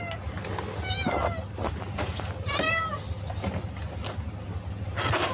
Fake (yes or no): no